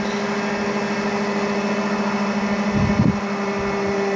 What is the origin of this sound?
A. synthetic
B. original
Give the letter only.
B